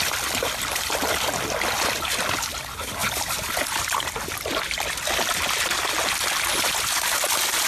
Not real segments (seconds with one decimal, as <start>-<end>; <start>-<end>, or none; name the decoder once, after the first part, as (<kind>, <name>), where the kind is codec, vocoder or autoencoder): none